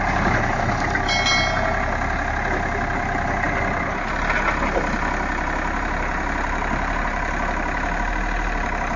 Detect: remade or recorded recorded